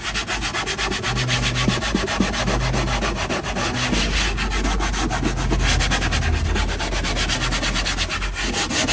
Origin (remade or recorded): recorded